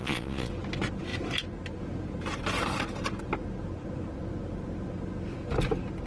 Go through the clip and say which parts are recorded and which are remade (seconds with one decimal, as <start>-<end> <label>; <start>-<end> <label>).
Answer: 0.0-0.5 remade; 0.5-6.1 recorded